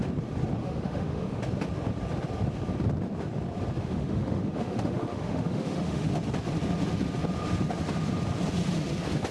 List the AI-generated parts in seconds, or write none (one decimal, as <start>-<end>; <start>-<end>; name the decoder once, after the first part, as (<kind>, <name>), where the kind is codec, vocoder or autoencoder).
0.6-1.4 (autoencoder, DAC-VAE); 3.8-6.1